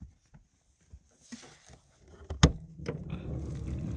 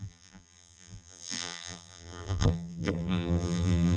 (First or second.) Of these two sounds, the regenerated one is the second